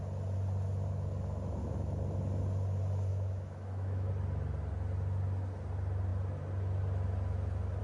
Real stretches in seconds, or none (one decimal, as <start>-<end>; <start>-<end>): 0.0-3.1; 4.1-7.8